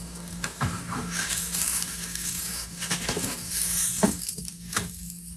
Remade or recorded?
remade